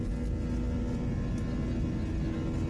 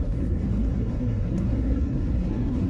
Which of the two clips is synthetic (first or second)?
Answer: second